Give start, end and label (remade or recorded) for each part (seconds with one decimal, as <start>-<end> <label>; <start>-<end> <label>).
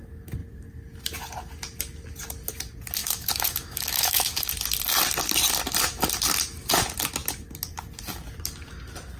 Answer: 0.0-3.0 recorded; 3.0-4.5 remade; 4.5-9.2 recorded